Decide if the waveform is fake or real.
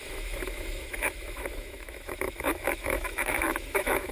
fake